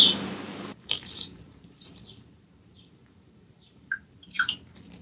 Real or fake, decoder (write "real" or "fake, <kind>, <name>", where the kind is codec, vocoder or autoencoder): fake, vocoder, BigVGAN v2